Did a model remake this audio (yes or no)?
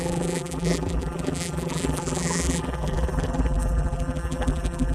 yes